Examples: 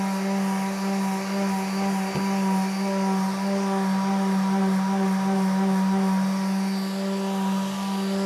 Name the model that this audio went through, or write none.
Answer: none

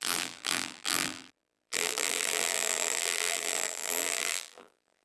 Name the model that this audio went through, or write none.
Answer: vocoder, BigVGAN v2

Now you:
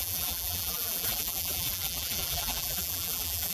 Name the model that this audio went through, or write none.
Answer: vocoder, BigVGAN v2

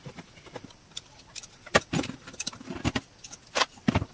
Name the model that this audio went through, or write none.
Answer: vocoder, BigVGAN v2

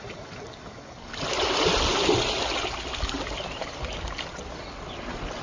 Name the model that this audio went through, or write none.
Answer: none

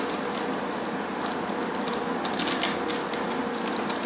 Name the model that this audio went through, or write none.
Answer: none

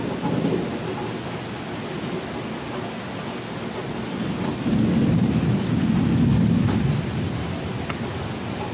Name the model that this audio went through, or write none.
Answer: none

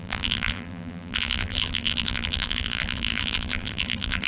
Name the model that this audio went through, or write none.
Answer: vocoder, BigVGAN v2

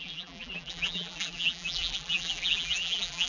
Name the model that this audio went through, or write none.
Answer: vocoder, BigVGAN v2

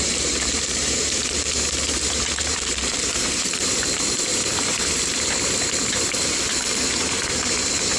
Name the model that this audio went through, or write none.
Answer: vocoder, BigVGAN v2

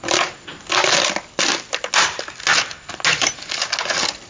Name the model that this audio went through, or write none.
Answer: none